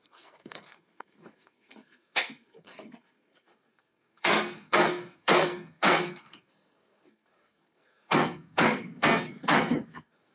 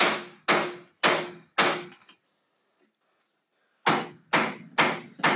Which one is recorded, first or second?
second